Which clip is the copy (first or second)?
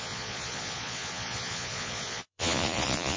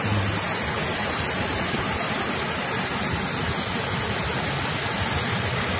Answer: first